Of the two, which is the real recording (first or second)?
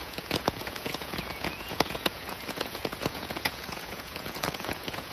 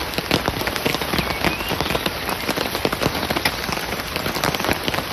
second